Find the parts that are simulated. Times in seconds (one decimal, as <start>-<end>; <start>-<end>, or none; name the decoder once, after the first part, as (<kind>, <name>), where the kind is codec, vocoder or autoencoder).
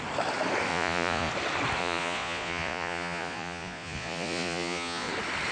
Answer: 0.7-1.3 (vocoder, Vocos); 1.8-5.1